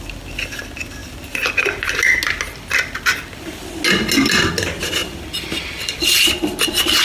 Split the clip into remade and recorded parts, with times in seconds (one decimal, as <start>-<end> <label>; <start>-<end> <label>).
0.0-7.0 recorded